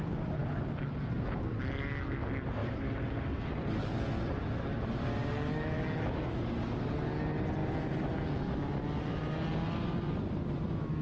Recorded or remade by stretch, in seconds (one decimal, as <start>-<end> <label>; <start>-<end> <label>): 0.0-2.6 recorded; 2.6-3.5 remade; 3.5-11.0 recorded